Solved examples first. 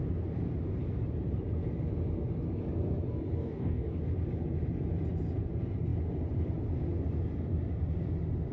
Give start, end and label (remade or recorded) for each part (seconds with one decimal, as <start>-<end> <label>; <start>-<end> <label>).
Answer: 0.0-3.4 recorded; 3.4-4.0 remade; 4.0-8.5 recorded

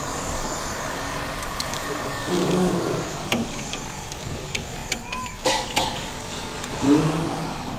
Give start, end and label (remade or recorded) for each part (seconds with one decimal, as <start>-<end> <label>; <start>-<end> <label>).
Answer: 0.0-7.8 remade

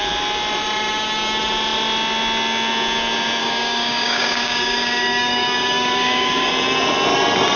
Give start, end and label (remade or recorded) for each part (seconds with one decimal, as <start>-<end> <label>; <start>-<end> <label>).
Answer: 0.0-3.4 recorded; 3.4-6.5 remade; 6.5-7.6 recorded